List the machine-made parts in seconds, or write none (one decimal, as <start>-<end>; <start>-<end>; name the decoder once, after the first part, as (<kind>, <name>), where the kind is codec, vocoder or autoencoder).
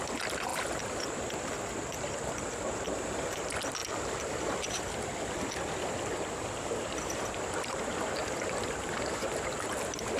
3.8-9.0 (vocoder, BigVGAN v2)